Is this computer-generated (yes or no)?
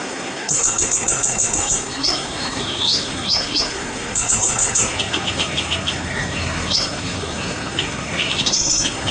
yes